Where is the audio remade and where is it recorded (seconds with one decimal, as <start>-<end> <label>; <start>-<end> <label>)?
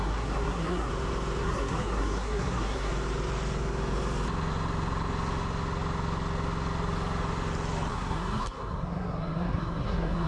0.0-0.9 remade; 0.9-1.4 recorded; 1.4-2.9 remade; 2.9-7.9 recorded; 7.9-10.3 remade